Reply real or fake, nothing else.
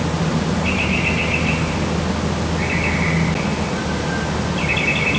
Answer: real